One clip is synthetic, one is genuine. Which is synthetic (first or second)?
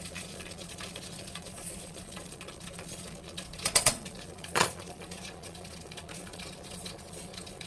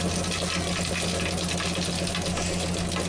first